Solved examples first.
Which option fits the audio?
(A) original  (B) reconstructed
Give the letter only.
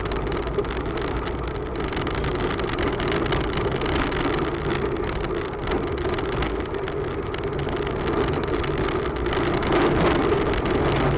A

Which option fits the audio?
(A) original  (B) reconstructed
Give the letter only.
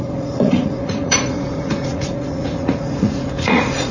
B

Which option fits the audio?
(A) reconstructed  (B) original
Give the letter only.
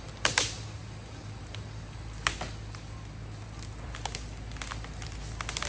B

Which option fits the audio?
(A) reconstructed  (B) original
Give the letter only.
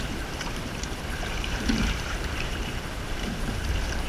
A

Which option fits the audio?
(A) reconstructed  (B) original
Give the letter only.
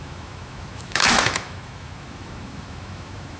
A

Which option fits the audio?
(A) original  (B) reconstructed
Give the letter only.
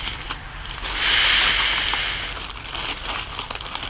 A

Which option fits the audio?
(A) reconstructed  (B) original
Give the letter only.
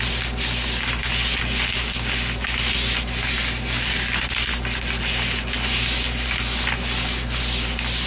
B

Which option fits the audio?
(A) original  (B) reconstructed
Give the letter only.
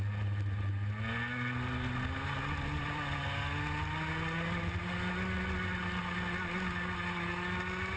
A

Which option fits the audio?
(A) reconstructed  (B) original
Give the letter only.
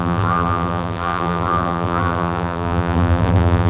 A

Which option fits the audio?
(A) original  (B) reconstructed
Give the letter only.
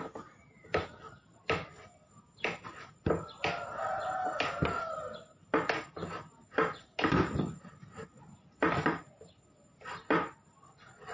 A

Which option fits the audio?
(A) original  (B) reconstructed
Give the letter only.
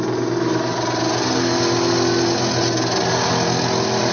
A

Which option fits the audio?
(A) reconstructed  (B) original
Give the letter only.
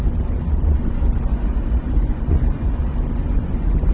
A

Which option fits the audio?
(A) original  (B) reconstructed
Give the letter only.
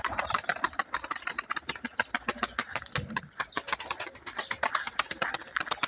A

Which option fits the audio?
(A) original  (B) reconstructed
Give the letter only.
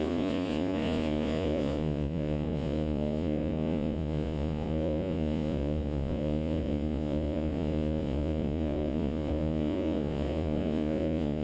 B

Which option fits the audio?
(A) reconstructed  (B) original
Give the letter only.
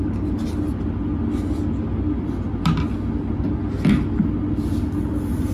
B